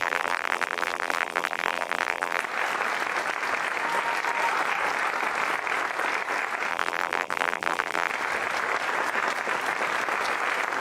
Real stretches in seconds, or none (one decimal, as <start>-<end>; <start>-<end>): 2.4-6.7; 8.1-10.8